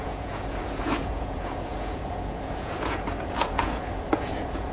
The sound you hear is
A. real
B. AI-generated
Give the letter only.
B